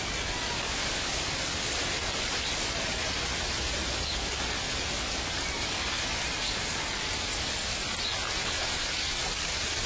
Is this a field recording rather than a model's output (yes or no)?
yes